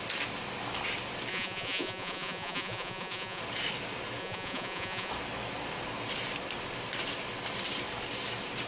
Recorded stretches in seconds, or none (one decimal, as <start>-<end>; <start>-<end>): 0.0-1.3; 3.4-4.2; 5.1-8.7